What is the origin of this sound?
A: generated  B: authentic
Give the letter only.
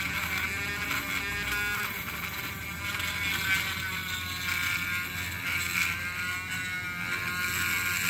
B